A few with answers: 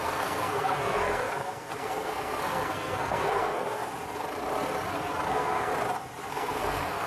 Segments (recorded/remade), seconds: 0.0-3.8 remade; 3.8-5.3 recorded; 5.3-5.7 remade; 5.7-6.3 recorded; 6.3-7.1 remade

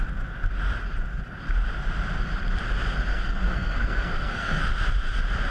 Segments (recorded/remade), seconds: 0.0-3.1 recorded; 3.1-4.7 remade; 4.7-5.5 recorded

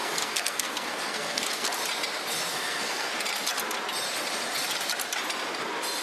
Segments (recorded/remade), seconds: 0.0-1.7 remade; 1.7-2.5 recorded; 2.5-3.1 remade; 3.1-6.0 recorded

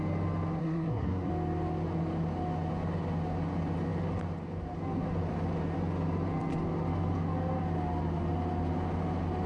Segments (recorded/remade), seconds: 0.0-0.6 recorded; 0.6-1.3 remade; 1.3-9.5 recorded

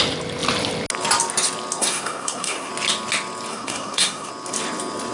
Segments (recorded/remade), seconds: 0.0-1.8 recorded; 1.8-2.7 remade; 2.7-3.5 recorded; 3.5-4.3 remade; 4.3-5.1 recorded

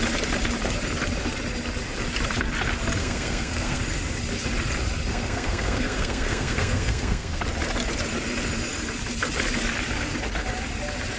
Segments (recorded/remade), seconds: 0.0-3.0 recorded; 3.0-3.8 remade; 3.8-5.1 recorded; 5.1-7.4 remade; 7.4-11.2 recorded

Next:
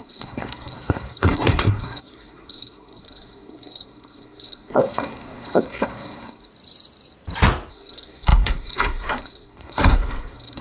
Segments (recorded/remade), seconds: 0.0-6.5 remade; 6.5-7.7 recorded; 7.7-10.6 remade